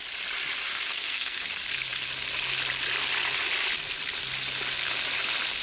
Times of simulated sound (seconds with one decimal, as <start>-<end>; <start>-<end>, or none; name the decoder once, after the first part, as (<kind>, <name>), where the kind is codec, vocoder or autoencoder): 0.7-1.5 (codec, SNAC)

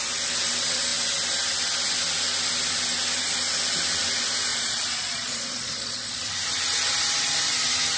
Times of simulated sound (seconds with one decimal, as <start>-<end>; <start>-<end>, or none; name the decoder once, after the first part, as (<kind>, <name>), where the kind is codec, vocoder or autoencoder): 4.5-6.3 (vocoder, Vocos)